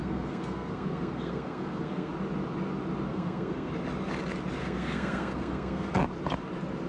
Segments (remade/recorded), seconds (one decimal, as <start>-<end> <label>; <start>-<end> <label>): 0.0-2.1 remade; 2.1-3.1 recorded; 3.1-3.7 remade; 3.7-4.6 recorded; 4.6-5.9 remade; 5.9-6.9 recorded